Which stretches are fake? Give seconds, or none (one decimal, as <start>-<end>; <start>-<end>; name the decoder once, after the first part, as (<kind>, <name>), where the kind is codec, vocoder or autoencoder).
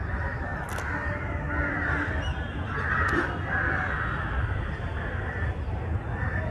0.0-0.5 (vocoder, BigVGAN v2); 1.7-2.3; 4.6-6.5